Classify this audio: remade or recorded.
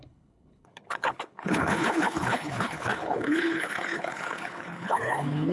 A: remade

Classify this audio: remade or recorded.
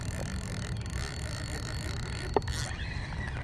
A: recorded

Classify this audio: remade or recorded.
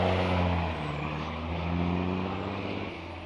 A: recorded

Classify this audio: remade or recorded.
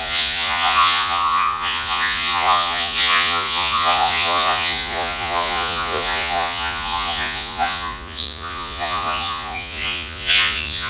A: remade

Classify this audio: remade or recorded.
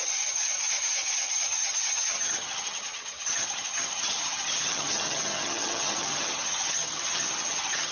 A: remade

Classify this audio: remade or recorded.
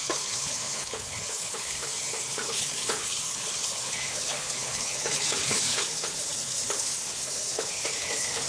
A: remade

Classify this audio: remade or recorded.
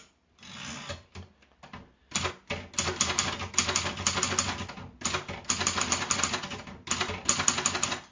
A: recorded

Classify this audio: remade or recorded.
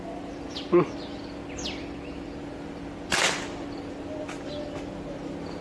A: recorded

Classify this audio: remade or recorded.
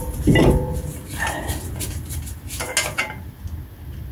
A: recorded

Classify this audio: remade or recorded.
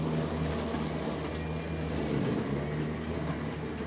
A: recorded